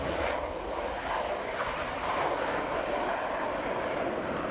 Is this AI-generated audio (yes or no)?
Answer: yes